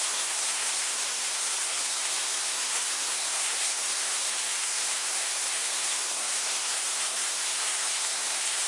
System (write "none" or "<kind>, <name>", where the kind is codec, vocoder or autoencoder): codec, SNAC